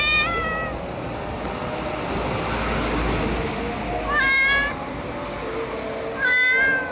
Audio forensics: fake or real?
real